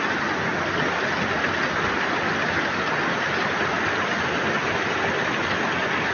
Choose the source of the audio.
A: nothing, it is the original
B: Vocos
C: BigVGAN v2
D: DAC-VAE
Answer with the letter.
A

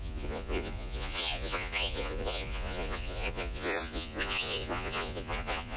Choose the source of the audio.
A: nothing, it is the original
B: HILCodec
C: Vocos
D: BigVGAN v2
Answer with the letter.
C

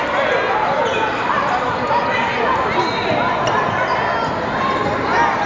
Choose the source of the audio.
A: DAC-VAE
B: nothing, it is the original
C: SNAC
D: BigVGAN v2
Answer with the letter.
B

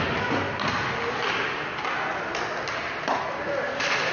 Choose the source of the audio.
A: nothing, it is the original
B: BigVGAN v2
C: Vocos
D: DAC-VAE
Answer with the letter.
A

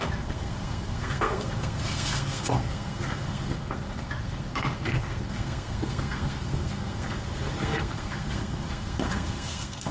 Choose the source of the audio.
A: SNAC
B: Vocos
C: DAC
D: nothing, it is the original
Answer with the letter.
A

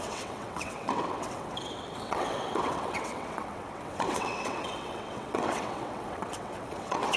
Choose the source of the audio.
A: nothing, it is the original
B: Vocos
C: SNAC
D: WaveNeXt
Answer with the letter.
D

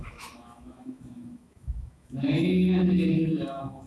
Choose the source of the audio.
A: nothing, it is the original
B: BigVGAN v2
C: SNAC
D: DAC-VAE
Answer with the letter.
D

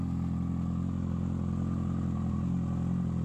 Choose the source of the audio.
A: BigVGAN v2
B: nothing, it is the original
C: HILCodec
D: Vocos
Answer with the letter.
B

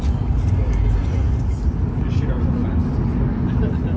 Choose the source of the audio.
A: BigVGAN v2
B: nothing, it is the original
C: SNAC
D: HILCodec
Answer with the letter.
B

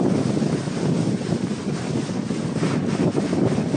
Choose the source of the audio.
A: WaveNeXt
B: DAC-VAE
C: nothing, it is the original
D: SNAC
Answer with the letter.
C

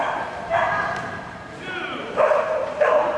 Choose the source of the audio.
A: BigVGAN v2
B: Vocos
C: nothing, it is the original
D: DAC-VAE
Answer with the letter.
A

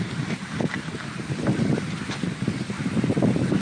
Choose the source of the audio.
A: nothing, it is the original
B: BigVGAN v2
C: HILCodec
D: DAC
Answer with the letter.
A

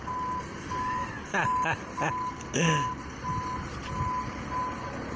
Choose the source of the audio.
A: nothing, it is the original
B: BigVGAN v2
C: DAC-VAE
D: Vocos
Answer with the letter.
A